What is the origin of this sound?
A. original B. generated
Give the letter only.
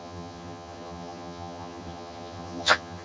B